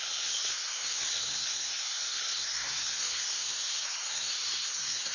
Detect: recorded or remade remade